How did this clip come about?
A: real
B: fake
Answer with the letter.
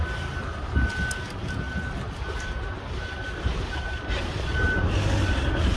A